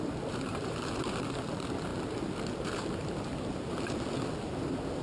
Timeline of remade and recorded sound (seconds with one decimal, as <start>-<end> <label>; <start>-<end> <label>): 0.0-5.0 recorded